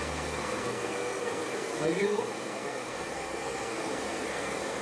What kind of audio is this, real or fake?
fake